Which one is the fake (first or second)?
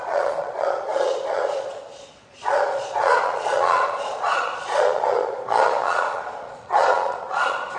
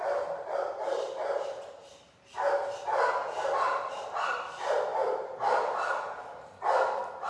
first